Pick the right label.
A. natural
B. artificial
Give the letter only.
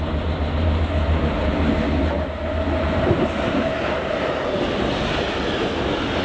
A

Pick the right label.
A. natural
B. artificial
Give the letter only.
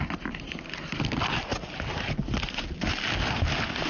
A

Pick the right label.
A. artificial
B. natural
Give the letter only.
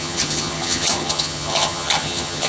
A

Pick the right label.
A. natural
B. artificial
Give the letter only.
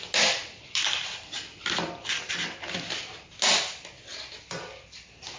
A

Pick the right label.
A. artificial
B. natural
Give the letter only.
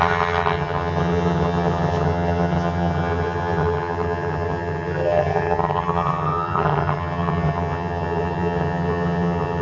A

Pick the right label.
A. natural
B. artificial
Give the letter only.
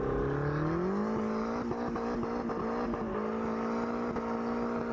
A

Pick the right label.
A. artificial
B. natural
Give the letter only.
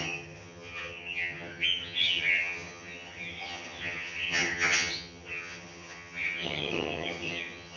A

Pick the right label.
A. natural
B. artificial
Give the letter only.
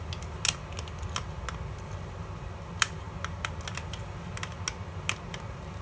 A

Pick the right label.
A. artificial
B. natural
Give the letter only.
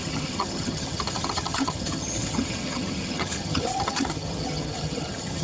A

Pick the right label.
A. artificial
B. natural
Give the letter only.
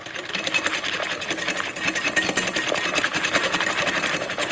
B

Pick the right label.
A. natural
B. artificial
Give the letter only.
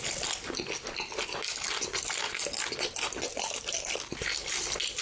A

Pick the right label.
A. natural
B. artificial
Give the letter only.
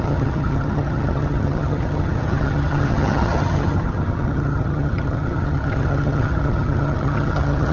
B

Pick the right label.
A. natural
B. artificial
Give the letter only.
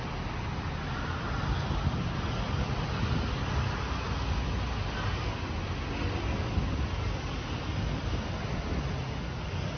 A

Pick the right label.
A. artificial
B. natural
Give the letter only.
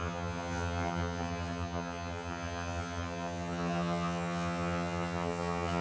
A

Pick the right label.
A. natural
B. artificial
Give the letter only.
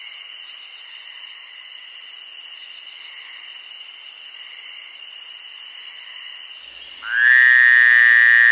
A